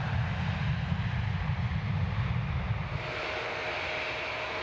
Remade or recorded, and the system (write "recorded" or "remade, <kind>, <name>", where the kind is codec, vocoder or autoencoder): recorded